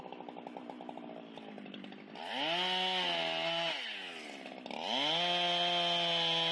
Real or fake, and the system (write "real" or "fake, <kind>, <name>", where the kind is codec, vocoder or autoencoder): real